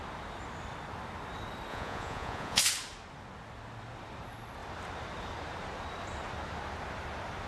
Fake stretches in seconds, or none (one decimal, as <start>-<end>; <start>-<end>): 1.7-2.6